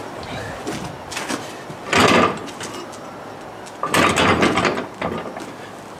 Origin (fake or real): real